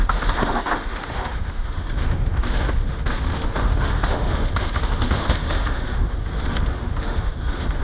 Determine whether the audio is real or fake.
fake